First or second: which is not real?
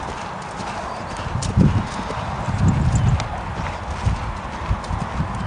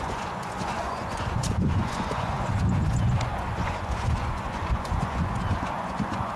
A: second